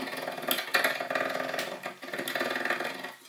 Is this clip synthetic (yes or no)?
no